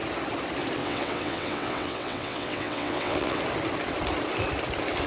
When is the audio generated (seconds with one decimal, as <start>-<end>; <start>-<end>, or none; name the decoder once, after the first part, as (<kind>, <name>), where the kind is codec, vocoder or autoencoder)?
0.8-3.4 (vocoder, WaveNeXt)